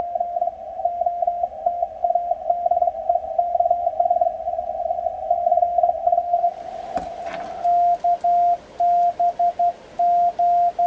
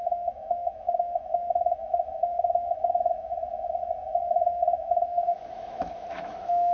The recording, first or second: first